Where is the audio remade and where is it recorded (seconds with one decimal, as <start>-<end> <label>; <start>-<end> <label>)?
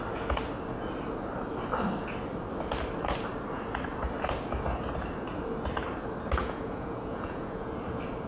0.0-6.4 recorded; 6.4-7.7 remade; 7.7-8.3 recorded